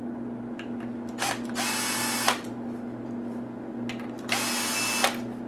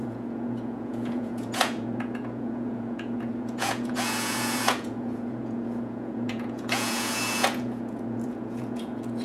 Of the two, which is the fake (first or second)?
second